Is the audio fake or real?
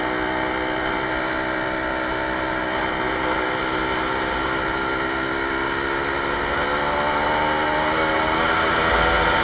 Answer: real